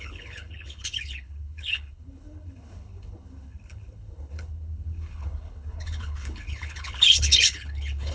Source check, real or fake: fake